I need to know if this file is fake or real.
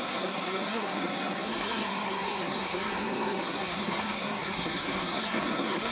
fake